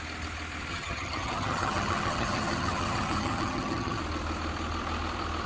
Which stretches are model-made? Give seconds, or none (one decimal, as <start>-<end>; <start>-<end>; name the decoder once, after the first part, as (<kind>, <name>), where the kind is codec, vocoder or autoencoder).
0.7-4.0 (vocoder, HiFi-GAN)